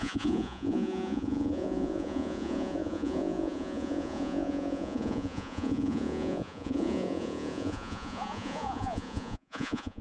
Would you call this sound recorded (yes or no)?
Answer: no